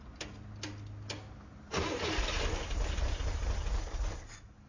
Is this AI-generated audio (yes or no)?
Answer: no